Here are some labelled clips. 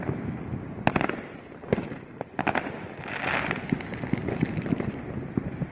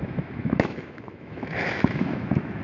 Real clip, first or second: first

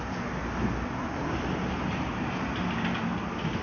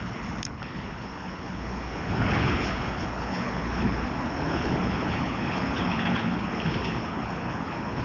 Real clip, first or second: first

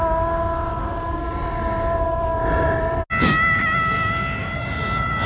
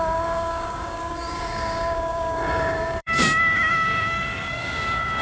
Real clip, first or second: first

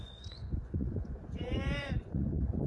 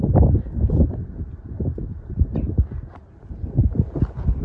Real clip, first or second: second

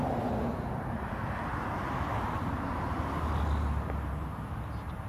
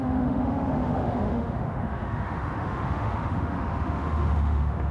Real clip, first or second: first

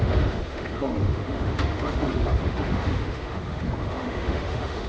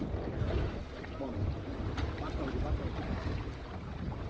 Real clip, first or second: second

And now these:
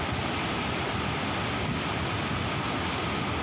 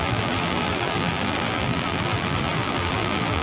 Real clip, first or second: first